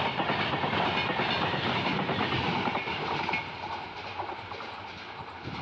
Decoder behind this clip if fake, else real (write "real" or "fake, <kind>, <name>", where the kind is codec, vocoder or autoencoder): real